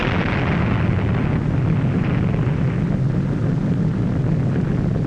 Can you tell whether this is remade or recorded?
recorded